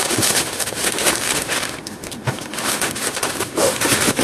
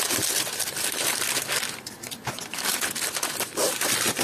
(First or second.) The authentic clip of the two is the second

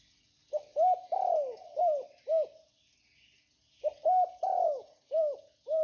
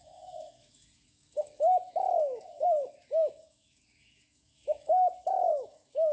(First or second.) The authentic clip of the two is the first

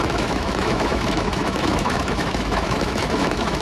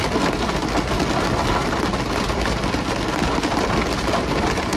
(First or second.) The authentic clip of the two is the second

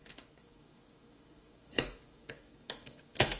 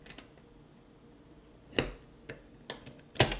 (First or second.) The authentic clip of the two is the second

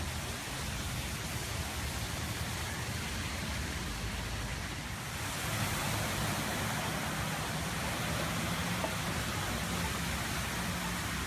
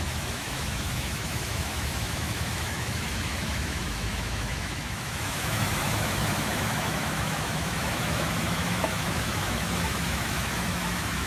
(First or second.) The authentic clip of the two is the first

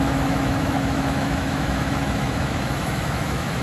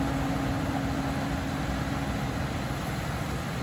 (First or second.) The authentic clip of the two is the second